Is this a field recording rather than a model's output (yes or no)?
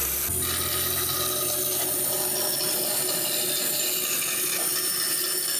yes